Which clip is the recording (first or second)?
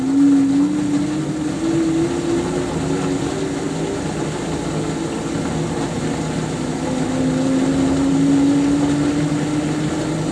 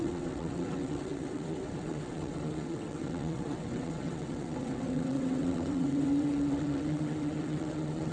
first